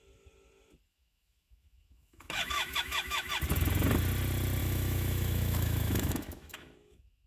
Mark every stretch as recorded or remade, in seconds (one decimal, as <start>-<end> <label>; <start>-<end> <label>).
0.0-0.9 recorded; 0.9-3.3 remade; 3.3-4.6 recorded; 4.6-7.3 remade